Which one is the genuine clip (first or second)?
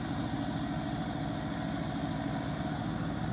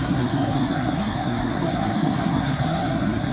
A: first